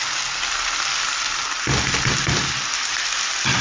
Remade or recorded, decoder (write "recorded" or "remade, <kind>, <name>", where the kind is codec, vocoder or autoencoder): recorded